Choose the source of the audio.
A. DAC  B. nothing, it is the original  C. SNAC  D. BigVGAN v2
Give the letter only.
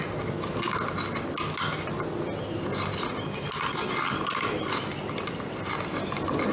B